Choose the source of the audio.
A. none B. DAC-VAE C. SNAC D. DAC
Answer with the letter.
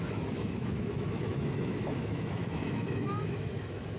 B